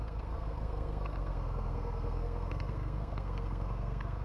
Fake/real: fake